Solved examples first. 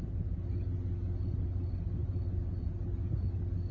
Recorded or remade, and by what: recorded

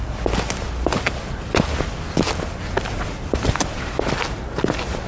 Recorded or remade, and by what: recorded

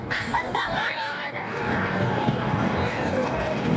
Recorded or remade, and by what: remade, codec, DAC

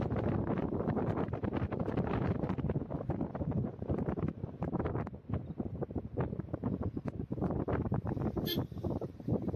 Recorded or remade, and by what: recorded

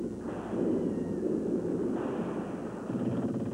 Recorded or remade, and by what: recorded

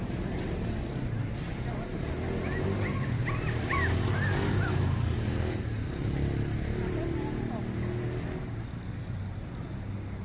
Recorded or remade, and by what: recorded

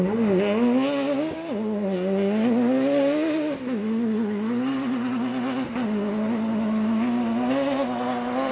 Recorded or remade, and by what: recorded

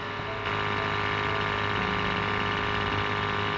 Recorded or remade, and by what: recorded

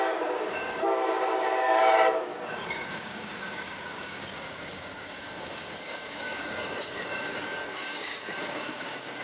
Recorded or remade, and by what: remade, codec, DAC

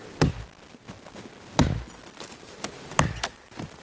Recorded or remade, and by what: recorded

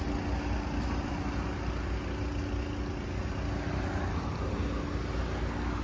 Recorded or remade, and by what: recorded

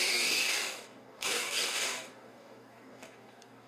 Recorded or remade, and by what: remade, codec, DAC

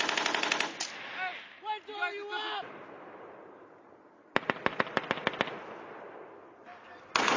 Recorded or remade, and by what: recorded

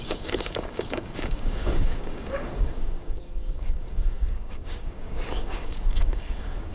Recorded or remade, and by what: remade, codec, DAC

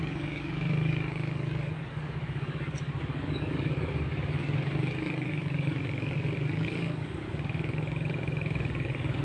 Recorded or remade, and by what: remade, codec, DAC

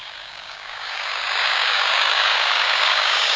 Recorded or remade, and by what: remade, codec, DAC